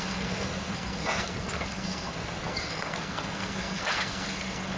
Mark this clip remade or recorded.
remade